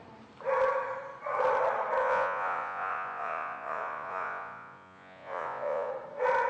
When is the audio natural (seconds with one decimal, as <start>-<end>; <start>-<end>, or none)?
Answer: 0.0-2.0; 5.9-6.5